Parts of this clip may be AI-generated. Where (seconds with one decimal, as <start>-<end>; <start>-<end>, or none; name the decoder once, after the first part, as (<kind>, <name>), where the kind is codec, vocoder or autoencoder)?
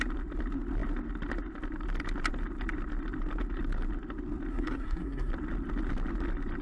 4.5-5.3 (codec, SNAC)